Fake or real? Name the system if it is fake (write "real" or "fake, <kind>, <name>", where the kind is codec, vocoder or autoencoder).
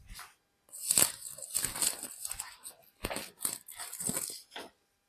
real